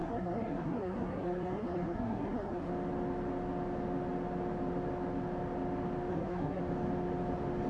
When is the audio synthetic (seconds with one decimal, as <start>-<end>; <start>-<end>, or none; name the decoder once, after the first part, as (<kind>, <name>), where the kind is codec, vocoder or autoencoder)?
0.0-2.7 (codec, SNAC); 6.1-6.6